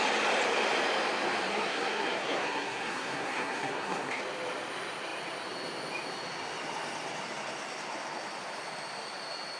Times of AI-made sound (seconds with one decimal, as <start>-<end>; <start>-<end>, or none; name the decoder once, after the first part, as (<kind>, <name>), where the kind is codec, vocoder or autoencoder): 1.5-4.2 (codec, SNAC)